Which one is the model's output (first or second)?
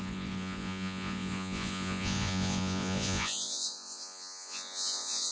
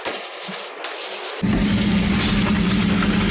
first